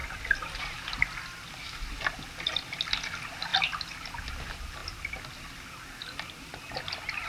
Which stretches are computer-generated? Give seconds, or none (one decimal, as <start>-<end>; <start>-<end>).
none